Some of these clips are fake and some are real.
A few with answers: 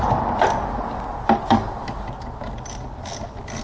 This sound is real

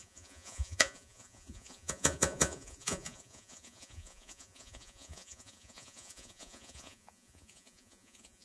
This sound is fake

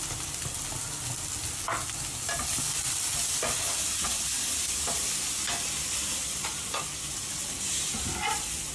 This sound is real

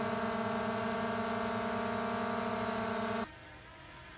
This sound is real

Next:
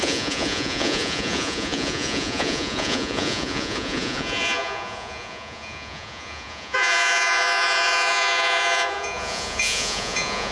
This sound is fake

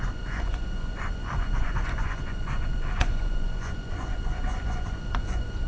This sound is fake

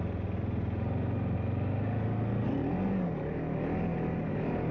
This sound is real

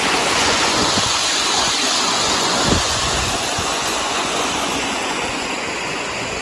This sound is fake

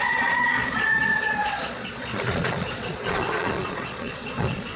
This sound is fake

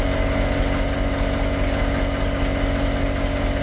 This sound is real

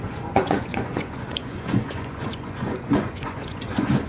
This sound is fake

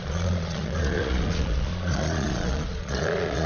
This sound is fake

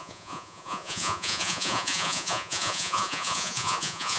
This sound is fake